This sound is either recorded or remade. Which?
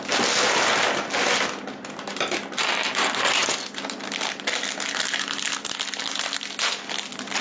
recorded